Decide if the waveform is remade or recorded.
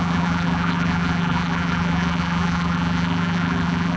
remade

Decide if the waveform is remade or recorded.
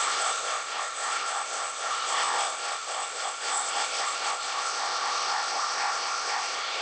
remade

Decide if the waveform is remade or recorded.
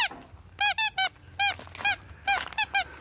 recorded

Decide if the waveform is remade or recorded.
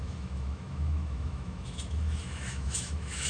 remade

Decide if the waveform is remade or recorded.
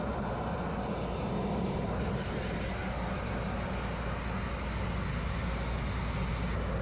recorded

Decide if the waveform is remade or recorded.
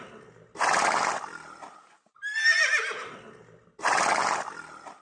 recorded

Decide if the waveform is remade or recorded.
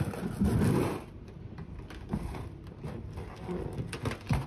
recorded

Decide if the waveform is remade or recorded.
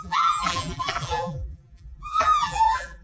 remade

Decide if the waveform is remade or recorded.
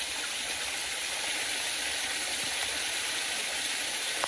remade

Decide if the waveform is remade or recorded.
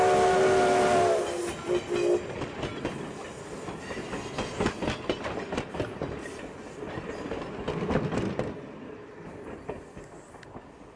recorded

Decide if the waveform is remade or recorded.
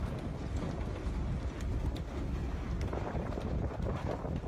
recorded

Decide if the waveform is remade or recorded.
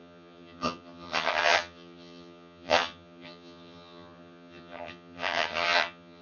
remade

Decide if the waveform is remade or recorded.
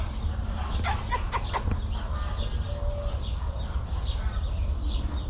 recorded